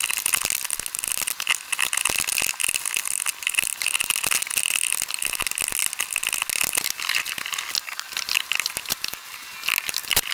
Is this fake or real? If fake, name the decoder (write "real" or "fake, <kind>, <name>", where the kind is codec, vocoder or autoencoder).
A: real